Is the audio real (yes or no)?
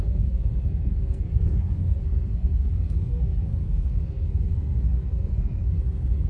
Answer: no